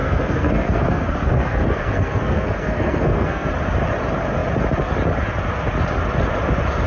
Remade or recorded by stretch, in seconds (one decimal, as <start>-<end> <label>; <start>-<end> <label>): 0.0-3.5 remade; 3.5-6.9 recorded